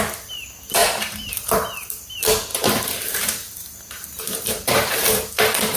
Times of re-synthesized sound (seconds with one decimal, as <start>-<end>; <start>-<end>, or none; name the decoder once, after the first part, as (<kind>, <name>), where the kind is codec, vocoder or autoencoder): 0.8-2.1 (vocoder, BigVGAN v2); 2.5-5.8